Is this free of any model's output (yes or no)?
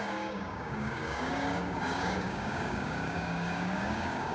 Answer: no